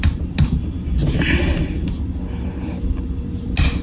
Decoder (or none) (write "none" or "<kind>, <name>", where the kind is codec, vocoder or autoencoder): none